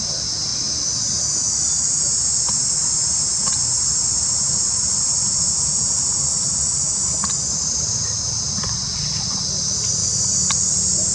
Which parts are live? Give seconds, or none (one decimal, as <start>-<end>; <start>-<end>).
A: 0.0-6.9; 9.0-11.1